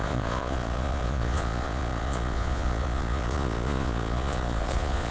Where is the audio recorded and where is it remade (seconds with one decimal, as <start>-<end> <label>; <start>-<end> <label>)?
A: 0.0-5.1 remade